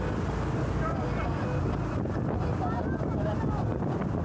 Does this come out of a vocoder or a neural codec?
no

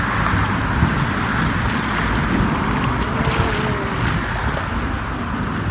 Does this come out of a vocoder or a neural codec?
no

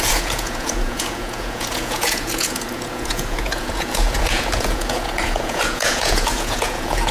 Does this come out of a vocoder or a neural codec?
yes